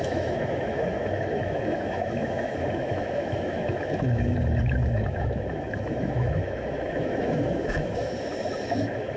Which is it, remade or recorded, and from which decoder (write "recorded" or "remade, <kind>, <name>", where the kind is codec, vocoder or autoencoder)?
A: remade, autoencoder, DAC-VAE